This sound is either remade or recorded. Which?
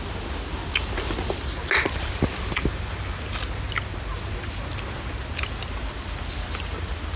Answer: recorded